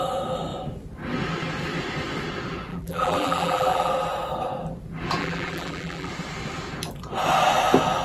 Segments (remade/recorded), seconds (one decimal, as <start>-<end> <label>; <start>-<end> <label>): 0.0-2.7 recorded; 2.7-3.9 remade; 3.9-5.2 recorded; 5.2-6.1 remade; 6.1-8.0 recorded